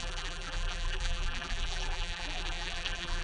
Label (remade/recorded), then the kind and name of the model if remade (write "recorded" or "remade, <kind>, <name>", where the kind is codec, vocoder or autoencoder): remade, vocoder, BigVGAN v2